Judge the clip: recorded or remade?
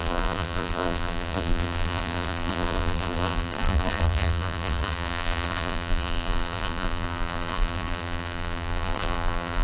remade